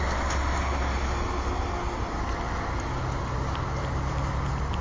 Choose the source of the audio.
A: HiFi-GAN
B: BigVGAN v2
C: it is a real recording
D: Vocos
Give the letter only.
C